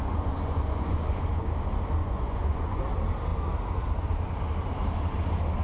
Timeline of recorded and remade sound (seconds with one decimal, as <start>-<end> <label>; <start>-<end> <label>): 0.0-1.4 remade; 1.4-2.0 recorded; 2.0-2.8 remade; 2.8-5.6 recorded